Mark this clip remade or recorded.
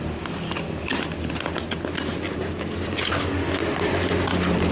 recorded